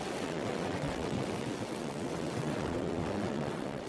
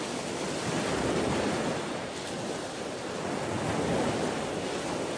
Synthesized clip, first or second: first